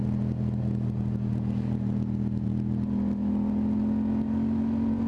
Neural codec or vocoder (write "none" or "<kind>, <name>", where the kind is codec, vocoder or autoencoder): none